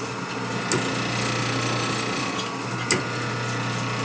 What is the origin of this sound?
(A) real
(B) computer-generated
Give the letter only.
A